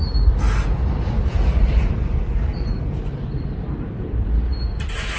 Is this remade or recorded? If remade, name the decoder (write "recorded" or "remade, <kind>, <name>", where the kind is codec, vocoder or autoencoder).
remade, vocoder, BigVGAN v2